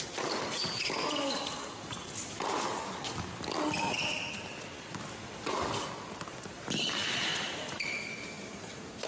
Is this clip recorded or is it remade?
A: recorded